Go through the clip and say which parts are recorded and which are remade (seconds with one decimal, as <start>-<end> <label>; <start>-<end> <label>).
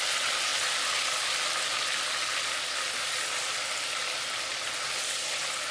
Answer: 0.0-5.7 recorded